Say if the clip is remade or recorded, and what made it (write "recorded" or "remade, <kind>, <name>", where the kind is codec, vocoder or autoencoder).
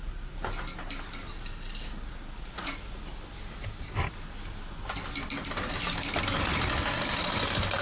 recorded